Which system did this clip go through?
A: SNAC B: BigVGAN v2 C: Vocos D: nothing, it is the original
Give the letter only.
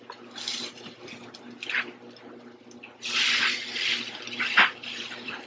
B